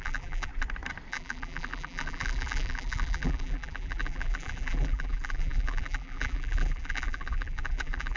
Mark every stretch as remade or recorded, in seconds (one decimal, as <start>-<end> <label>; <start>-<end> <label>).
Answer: 0.0-0.5 remade; 0.5-1.1 recorded; 1.1-8.2 remade